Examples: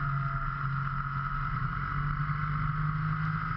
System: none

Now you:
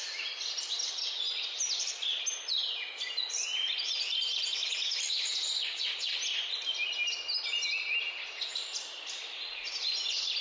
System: none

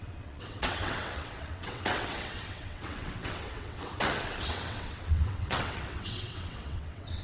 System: vocoder, WaveNeXt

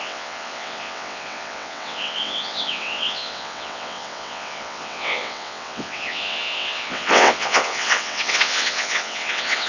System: vocoder, WaveNeXt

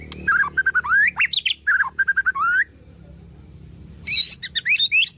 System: none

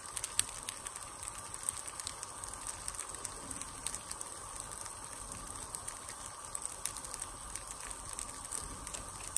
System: none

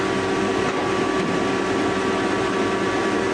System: none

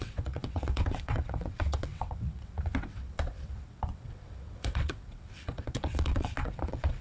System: vocoder, WaveNeXt